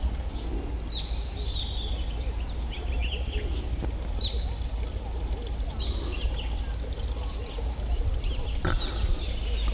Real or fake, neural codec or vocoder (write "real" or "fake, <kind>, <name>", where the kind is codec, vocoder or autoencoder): real